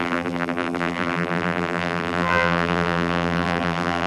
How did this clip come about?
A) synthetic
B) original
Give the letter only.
A